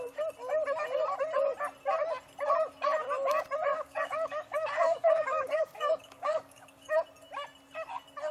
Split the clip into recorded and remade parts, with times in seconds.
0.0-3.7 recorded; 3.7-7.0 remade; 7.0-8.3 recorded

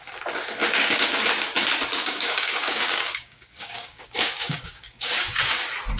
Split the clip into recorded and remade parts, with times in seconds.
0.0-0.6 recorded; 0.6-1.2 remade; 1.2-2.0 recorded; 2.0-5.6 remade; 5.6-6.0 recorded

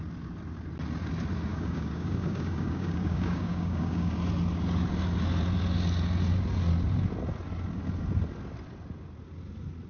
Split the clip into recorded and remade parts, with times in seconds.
0.0-1.5 recorded; 1.5-4.1 remade; 4.1-9.9 recorded